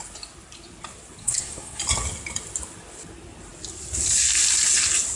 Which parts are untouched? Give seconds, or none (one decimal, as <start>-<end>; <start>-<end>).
0.0-1.2; 1.8-5.2